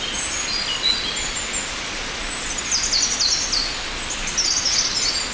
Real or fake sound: real